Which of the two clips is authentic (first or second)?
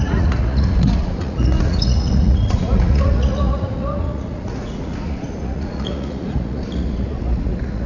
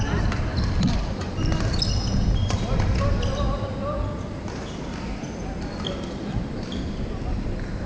second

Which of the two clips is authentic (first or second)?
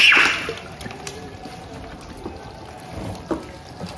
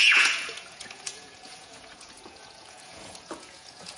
first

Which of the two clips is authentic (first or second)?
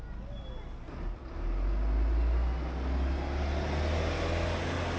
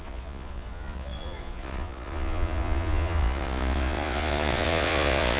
first